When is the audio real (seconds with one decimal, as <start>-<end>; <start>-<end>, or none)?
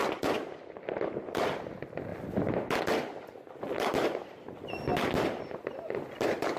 0.0-6.6